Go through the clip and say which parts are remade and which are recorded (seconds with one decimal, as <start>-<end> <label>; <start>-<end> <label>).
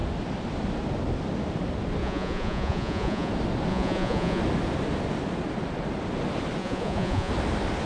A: 0.0-2.0 recorded; 2.0-3.3 remade; 3.3-3.7 recorded; 3.7-4.4 remade; 4.4-6.6 recorded; 6.6-7.3 remade; 7.3-7.9 recorded